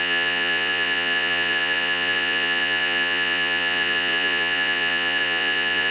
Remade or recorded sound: remade